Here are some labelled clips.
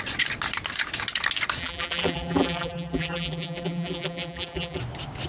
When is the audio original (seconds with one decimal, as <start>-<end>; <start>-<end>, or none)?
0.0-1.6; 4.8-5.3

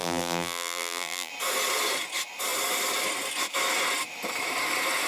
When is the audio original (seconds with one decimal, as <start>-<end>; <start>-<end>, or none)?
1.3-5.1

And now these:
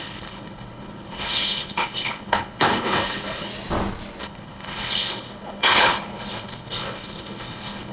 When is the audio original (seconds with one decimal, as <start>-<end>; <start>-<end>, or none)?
3.5-4.2

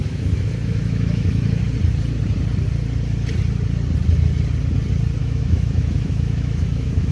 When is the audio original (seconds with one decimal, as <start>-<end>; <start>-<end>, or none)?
1.6-5.2